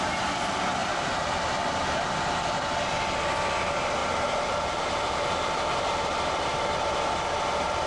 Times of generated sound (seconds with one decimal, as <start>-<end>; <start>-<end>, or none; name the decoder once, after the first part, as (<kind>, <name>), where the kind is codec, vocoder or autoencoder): 4.0-7.9 (vocoder, BigVGAN v2)